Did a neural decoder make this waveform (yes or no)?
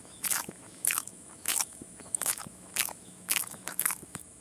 yes